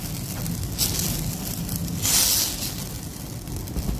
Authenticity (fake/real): real